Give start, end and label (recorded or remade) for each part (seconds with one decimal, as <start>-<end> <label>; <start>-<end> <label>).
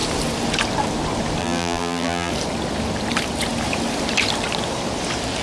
0.0-1.4 recorded; 1.4-2.3 remade; 2.3-5.4 recorded